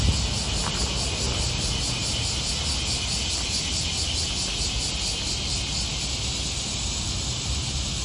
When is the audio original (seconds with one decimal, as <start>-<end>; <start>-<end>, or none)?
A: 0.0-8.0